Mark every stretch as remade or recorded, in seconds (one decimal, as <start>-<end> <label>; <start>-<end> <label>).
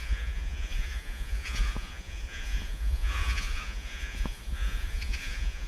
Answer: 0.0-5.7 remade